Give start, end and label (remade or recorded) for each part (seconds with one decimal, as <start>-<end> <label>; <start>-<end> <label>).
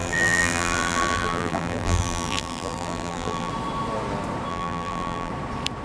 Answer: 0.0-3.5 remade; 3.5-4.5 recorded; 4.5-5.3 remade; 5.3-5.8 recorded